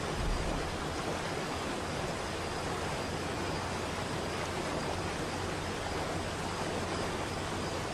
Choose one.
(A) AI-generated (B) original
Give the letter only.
B